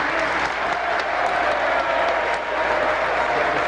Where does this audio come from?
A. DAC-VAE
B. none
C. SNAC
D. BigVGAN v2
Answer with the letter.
B